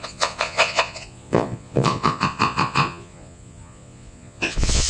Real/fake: fake